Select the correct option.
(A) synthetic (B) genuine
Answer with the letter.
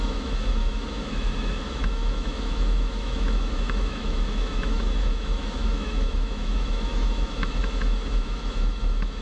A